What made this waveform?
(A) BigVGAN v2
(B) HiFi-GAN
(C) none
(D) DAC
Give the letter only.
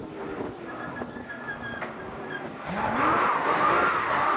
C